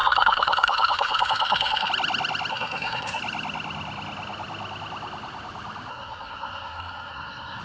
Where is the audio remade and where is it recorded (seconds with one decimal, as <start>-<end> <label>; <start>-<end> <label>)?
0.0-1.9 remade; 1.9-2.5 recorded; 2.5-3.2 remade; 3.2-5.9 recorded; 5.9-7.6 remade